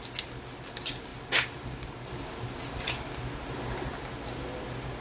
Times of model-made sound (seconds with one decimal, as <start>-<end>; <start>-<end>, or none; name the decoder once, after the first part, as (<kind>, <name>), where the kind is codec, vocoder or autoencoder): none

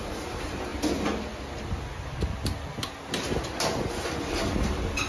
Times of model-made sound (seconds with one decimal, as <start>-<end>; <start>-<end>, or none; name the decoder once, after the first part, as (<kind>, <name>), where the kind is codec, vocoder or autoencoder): none

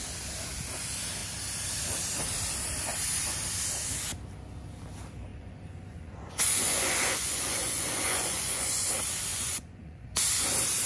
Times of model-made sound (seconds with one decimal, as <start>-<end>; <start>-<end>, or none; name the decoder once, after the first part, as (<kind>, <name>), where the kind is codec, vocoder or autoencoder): 5.3-8.9 (vocoder, Vocos); 9.3-10.1

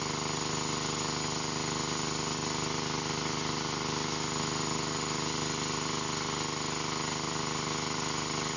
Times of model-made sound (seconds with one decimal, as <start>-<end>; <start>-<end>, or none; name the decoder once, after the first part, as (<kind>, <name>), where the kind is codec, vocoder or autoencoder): none

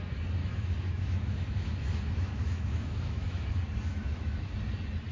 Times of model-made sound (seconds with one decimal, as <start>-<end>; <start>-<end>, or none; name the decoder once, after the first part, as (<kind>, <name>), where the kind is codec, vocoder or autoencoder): 0.4-3.5 (autoencoder, DAC-VAE); 3.9-4.5

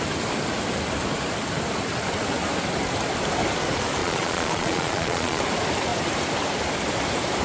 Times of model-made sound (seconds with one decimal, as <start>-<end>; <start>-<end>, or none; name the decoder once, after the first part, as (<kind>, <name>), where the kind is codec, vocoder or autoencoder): 4.0-5.4 (vocoder, Vocos)